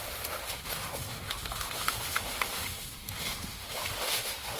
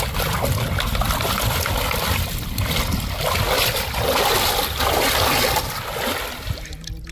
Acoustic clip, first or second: second